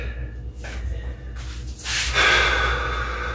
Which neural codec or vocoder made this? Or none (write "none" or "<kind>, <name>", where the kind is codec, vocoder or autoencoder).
none